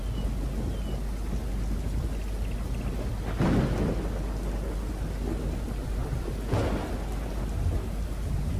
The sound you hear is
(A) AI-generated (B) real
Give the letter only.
B